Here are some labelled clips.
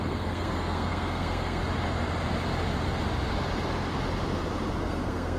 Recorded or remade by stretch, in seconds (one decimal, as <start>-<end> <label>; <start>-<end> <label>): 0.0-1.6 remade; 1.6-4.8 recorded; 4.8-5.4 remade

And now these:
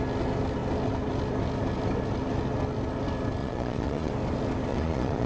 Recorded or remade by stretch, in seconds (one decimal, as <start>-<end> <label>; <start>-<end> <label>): 0.0-3.4 recorded; 3.4-4.1 remade; 4.1-4.7 recorded; 4.7-5.3 remade

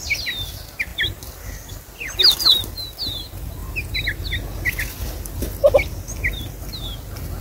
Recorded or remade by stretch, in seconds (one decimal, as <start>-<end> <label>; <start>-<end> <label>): 0.0-7.4 recorded